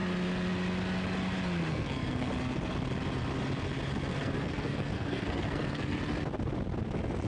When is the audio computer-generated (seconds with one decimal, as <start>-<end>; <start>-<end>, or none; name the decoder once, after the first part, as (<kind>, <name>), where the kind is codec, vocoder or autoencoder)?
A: 1.7-2.3 (codec, SNAC); 4.1-6.0